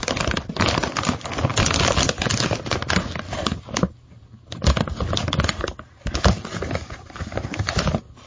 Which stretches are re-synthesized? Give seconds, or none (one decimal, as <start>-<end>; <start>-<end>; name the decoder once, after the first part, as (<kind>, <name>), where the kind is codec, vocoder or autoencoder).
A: none